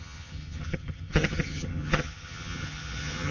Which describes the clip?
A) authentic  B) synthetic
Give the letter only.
B